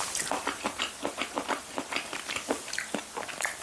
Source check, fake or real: real